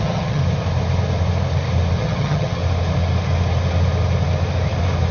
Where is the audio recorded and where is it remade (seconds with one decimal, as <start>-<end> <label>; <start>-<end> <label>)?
0.0-0.4 remade; 0.4-2.0 recorded; 2.0-2.6 remade; 2.6-5.1 recorded